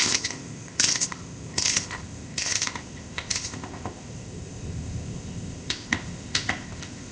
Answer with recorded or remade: remade